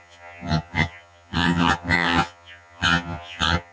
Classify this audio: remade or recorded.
remade